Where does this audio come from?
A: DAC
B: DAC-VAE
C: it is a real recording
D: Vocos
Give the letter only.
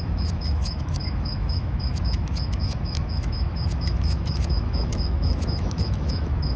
B